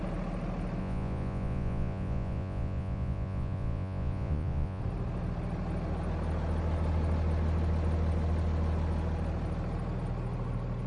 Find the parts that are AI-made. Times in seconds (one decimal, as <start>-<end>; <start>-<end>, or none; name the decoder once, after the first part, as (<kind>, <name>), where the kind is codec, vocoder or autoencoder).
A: 0.8-4.8 (vocoder, Vocos)